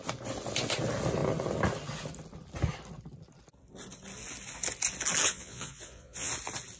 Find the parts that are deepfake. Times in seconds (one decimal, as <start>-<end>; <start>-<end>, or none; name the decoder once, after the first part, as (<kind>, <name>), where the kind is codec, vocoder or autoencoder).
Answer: 5.3-6.3 (vocoder, Vocos)